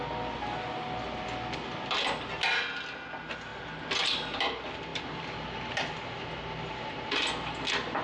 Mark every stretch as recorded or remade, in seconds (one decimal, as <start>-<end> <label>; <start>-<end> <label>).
0.0-8.0 recorded